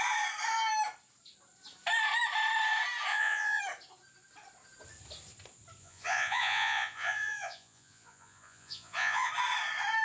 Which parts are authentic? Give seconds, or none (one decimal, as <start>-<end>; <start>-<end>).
0.0-3.1; 3.6-5.8; 9.3-10.0